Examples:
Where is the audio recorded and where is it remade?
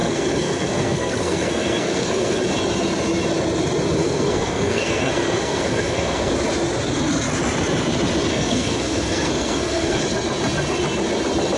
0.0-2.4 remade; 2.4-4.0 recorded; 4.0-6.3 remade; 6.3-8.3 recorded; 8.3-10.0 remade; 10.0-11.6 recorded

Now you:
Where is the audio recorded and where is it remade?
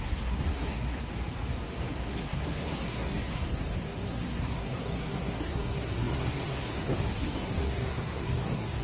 0.0-1.1 remade; 1.1-1.9 recorded; 1.9-8.8 remade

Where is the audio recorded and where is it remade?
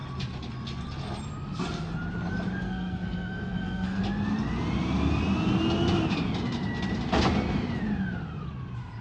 0.0-2.6 recorded; 2.6-4.0 remade; 4.0-9.0 recorded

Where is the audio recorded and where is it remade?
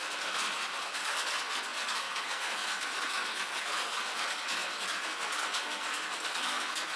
0.0-7.0 remade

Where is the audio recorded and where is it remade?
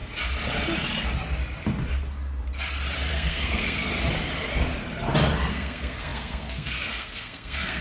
0.0-3.1 recorded; 3.1-3.9 remade; 3.9-5.5 recorded; 5.5-7.8 remade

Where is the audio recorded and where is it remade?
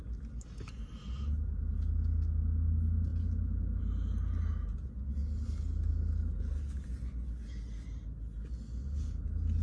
0.0-9.6 recorded